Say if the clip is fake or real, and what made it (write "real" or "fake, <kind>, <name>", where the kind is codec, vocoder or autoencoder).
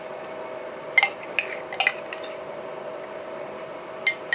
real